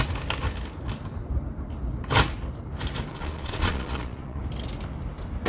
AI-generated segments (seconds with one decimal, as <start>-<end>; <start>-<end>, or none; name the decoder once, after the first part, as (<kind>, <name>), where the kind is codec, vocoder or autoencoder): 3.1-4.4 (vocoder, Vocos)